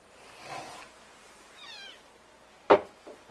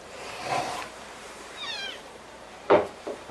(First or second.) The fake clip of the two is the second